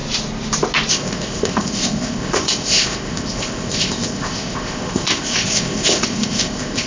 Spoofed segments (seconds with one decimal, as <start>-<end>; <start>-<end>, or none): 0.9-6.9